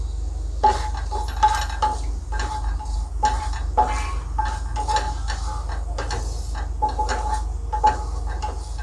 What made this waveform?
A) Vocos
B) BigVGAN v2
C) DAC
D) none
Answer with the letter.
D